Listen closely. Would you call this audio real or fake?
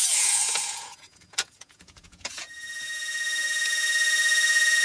fake